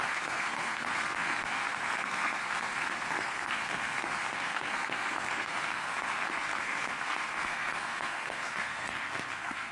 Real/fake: fake